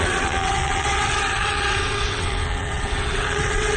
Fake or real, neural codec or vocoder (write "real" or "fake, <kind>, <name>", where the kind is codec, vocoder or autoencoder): fake, vocoder, WaveNeXt